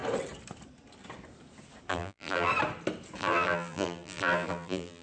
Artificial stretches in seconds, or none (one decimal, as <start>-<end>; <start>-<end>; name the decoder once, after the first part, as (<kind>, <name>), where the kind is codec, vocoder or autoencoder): 1.9-2.5 (vocoder, BigVGAN v2); 3.2-5.0